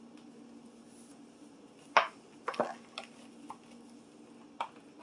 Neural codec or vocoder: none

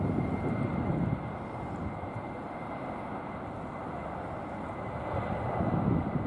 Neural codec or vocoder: none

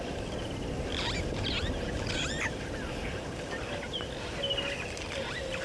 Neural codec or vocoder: none